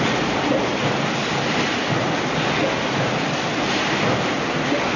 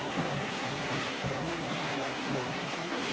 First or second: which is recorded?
first